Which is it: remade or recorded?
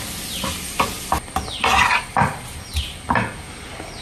recorded